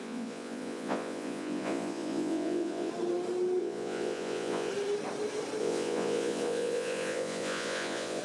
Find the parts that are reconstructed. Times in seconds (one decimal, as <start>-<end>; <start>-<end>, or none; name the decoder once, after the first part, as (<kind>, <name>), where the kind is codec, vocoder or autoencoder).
0.0-2.9 (vocoder, Vocos); 3.6-4.7; 5.6-8.2